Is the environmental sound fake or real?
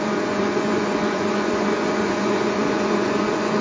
fake